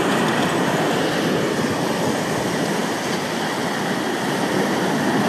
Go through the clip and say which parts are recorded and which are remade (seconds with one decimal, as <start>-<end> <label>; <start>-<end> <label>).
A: 0.0-5.3 recorded

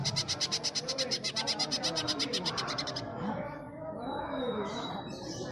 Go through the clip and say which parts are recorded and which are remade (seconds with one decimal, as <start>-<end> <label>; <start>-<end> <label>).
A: 0.0-3.1 recorded; 3.1-4.9 remade; 4.9-5.5 recorded